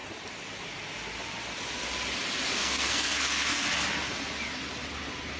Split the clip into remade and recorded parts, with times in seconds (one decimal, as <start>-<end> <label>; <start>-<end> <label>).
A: 0.0-2.6 recorded; 2.6-3.6 remade; 3.6-5.4 recorded